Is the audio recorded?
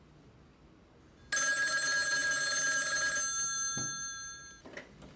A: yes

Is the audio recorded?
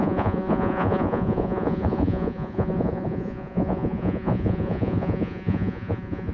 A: no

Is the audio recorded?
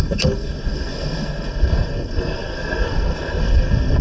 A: no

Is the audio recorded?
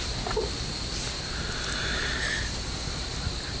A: yes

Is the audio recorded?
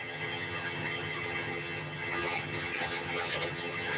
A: no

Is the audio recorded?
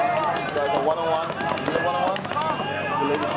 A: yes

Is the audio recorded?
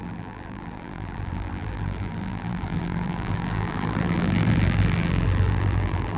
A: no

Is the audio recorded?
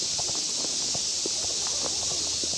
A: yes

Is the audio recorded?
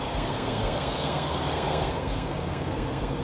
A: no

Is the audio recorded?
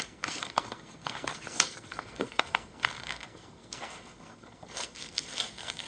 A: no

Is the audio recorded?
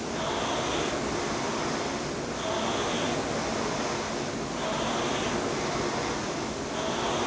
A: yes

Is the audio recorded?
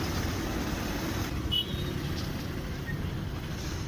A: yes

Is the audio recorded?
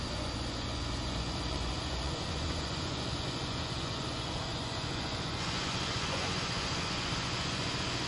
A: no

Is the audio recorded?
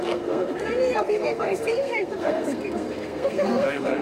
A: no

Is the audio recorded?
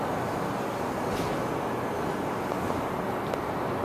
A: yes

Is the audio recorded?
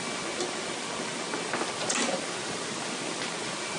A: yes